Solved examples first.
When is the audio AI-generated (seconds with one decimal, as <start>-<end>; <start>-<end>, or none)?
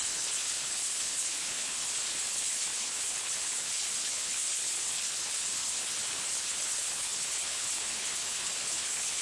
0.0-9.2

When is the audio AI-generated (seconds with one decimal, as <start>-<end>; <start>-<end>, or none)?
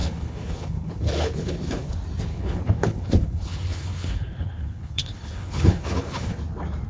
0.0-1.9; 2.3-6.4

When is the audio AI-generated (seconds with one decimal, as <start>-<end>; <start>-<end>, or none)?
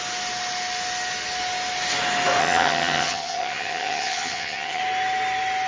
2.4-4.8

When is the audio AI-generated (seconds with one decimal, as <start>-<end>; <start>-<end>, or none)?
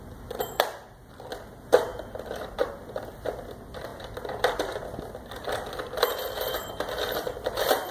0.0-7.9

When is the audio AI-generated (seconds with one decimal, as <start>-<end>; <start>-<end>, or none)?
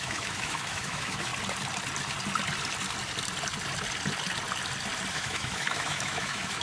0.0-1.3; 5.1-6.6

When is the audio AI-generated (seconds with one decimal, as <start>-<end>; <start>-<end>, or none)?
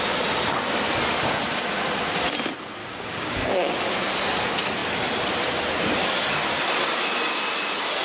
2.8-3.7